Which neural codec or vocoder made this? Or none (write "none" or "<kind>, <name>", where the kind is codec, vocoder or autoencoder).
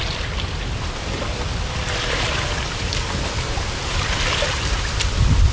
none